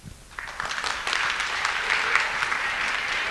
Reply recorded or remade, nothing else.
recorded